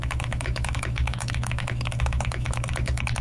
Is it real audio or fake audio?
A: fake